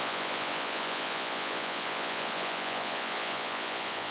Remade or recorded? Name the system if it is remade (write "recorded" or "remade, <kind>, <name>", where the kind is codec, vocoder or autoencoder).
remade, vocoder, Vocos